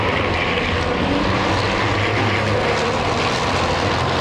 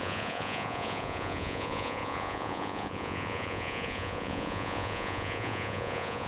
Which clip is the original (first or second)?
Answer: first